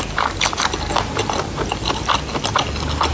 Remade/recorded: recorded